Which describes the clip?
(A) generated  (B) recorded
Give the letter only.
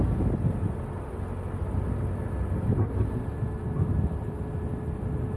B